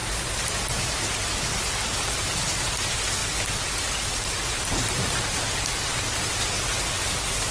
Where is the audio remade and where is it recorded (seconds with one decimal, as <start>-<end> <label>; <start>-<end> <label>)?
0.0-7.0 recorded; 7.0-7.5 remade